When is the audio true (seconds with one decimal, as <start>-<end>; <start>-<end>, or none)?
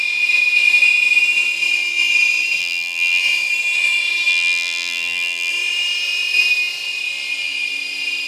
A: 0.0-2.6; 3.2-4.3; 5.5-8.3